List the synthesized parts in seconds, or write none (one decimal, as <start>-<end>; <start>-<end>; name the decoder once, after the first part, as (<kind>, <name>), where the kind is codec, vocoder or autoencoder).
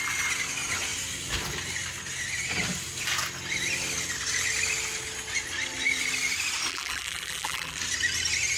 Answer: 6.7-7.8 (vocoder, BigVGAN v2)